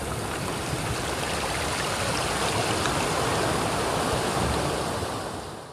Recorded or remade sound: recorded